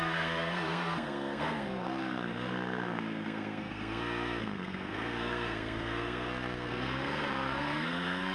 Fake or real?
fake